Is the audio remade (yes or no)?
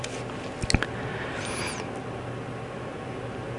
no